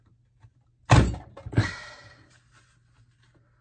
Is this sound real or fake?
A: real